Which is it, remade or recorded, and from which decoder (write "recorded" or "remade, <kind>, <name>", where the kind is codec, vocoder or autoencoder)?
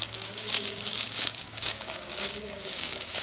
remade, codec, DAC